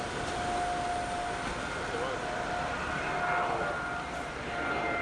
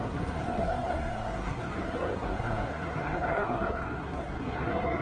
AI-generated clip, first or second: second